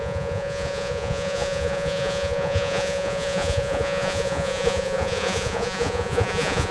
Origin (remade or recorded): remade